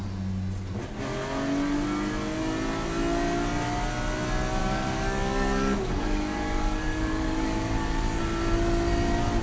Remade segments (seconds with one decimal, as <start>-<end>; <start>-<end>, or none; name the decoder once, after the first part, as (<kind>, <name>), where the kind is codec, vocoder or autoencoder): 4.6-8.2 (codec, DAC)